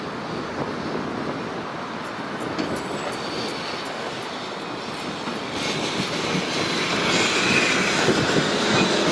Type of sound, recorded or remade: recorded